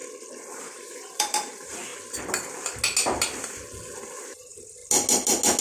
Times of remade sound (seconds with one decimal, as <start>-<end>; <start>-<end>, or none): 0.6-1.9; 4.2-4.8